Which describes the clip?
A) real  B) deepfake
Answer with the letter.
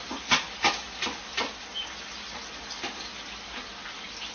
A